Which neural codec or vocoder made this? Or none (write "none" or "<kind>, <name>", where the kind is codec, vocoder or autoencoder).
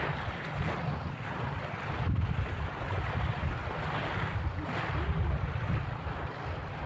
none